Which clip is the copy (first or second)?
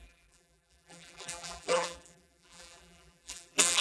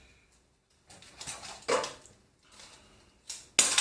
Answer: first